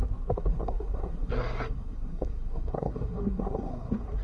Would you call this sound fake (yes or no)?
yes